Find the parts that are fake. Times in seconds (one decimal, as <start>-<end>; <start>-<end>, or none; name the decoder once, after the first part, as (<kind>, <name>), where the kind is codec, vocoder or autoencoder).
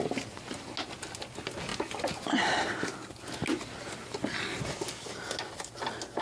none